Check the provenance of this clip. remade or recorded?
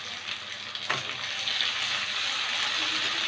recorded